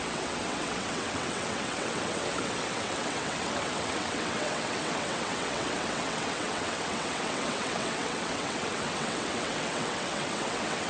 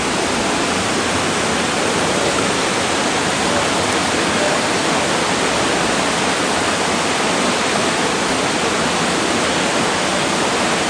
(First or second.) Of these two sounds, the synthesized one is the first